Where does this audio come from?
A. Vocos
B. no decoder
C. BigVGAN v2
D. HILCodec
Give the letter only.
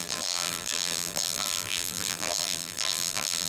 C